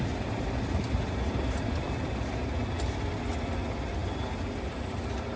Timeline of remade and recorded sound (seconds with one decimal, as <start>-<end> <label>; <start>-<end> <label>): 0.0-5.4 recorded